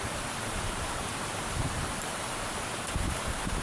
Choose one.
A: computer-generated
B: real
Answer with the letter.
A